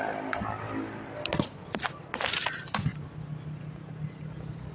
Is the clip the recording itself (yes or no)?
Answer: yes